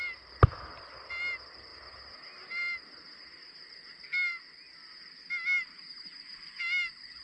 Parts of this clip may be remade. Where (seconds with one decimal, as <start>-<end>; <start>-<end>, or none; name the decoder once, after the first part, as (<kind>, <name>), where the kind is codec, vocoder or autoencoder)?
none